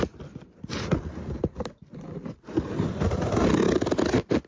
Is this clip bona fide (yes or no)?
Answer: yes